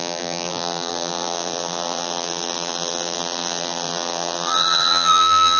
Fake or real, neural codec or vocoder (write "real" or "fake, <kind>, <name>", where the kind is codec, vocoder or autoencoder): fake, vocoder, BigVGAN v2